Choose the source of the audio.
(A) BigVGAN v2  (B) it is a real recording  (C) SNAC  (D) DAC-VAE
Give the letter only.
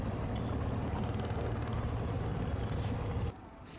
B